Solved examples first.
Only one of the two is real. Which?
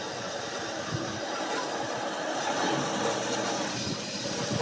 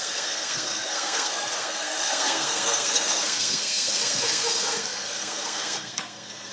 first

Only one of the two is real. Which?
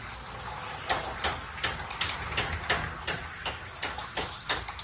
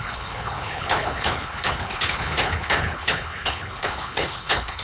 first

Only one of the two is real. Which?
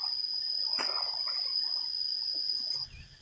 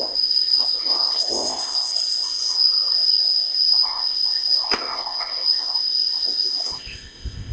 first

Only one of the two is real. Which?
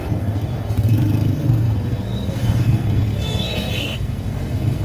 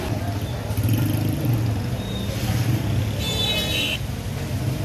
second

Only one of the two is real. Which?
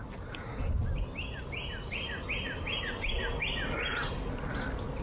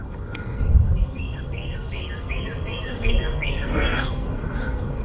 first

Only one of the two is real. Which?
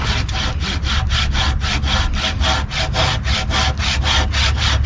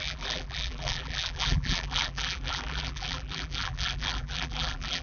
first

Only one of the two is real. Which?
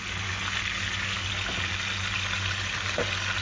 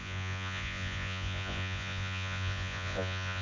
first